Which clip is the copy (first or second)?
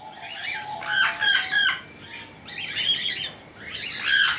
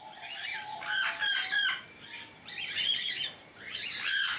second